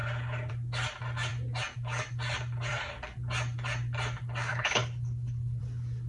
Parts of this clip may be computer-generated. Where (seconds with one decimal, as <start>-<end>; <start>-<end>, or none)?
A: 4.5-5.6